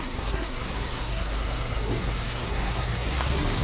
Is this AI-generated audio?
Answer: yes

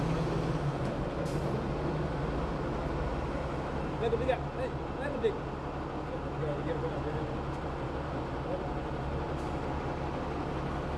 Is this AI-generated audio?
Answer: no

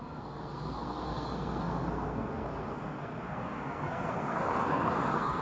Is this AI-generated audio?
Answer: yes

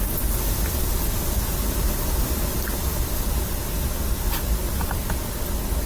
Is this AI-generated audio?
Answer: no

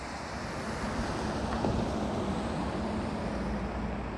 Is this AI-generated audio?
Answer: no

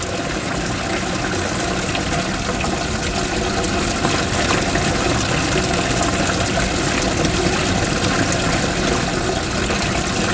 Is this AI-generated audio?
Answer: no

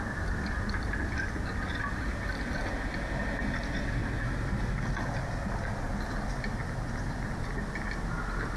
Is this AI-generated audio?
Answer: no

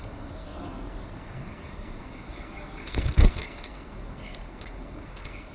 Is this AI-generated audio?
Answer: yes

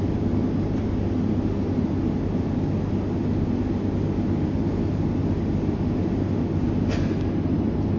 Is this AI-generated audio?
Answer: no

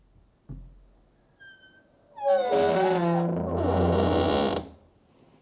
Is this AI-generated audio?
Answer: no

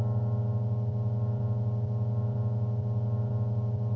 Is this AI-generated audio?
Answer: no